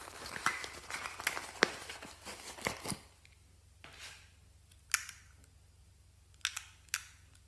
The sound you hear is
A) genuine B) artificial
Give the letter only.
A